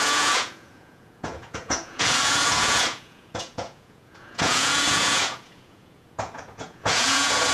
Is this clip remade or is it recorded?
remade